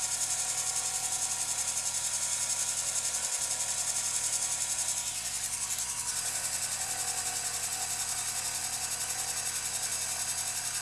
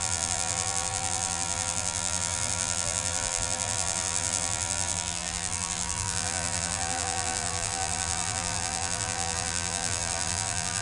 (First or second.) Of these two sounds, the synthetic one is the second